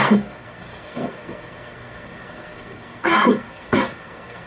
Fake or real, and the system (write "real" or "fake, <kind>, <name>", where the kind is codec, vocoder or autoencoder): fake, codec, SNAC